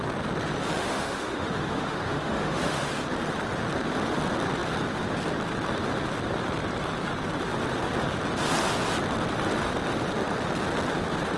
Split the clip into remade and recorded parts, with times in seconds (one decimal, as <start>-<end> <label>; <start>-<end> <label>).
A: 0.0-0.8 recorded; 0.8-2.9 remade; 2.9-11.4 recorded